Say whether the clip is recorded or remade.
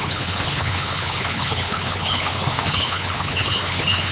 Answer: remade